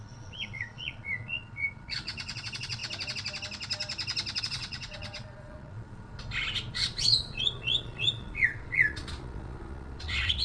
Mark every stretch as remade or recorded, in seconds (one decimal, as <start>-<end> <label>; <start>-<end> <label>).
0.0-2.8 remade; 2.8-4.4 recorded; 4.4-6.1 remade; 6.1-6.7 recorded; 6.7-10.4 remade